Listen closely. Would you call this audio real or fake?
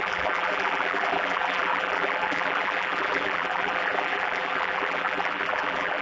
fake